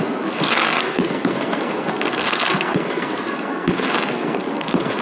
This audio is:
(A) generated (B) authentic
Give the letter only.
A